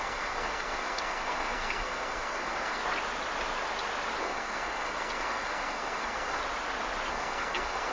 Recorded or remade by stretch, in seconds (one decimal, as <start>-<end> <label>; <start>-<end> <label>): 0.0-2.8 remade; 2.8-4.2 recorded; 4.2-6.4 remade; 6.4-7.1 recorded; 7.1-7.9 remade